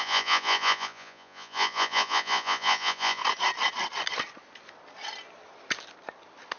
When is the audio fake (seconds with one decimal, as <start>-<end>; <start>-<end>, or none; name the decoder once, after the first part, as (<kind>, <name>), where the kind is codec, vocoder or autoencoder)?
0.0-3.2 (vocoder, Vocos)